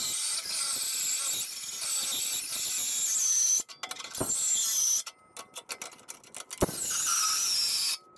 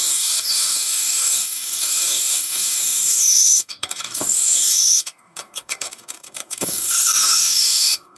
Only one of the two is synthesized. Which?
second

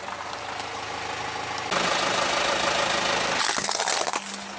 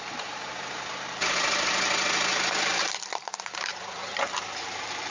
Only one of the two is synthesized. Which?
second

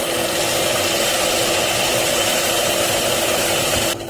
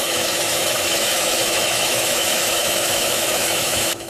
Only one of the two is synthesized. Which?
second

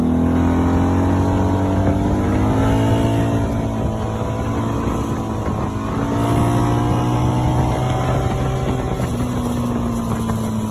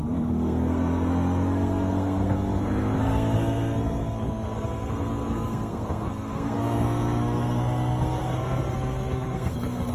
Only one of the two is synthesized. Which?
second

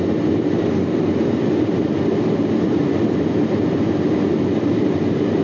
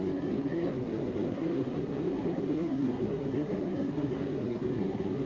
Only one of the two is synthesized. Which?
second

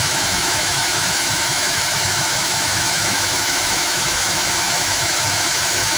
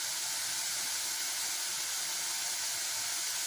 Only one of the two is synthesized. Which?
first